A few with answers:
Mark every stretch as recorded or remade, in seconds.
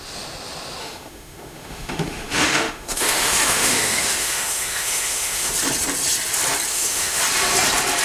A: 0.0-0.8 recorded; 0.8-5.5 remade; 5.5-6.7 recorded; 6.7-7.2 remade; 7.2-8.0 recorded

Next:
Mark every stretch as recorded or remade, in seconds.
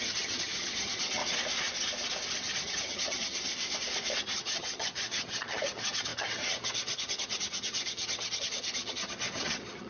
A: 0.0-1.2 remade; 1.2-2.3 recorded; 2.3-3.5 remade; 3.5-4.2 recorded; 4.2-9.9 remade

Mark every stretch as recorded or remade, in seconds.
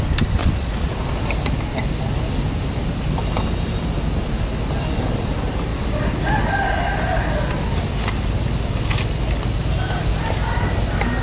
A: 0.0-0.4 recorded; 0.4-0.9 remade; 0.9-11.2 recorded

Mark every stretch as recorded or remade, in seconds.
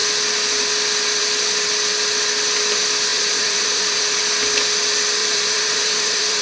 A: 0.0-3.1 recorded; 3.1-4.2 remade; 4.2-5.2 recorded; 5.2-6.4 remade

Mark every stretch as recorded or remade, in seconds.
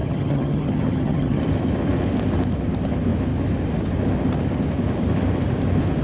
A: 0.0-1.4 remade; 1.4-6.0 recorded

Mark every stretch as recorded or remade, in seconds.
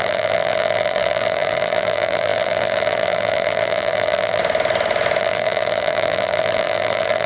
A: 0.0-4.4 remade; 4.4-5.2 recorded; 5.2-7.3 remade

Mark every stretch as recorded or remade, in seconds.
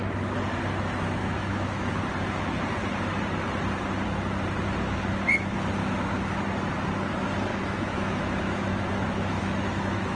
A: 0.0-1.2 recorded; 1.2-1.9 remade; 1.9-5.8 recorded; 5.8-6.4 remade; 6.4-7.5 recorded; 7.5-10.2 remade